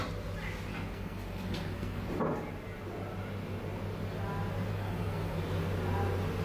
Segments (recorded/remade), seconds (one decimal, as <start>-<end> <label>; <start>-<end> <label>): 0.0-0.7 recorded; 0.7-2.1 remade; 2.1-4.7 recorded; 4.7-5.4 remade; 5.4-6.4 recorded